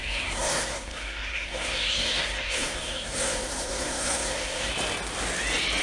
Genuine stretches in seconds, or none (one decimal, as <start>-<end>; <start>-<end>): 4.7-5.8